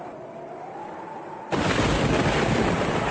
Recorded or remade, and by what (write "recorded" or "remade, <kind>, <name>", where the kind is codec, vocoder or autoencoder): recorded